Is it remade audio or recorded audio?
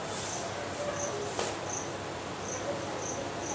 recorded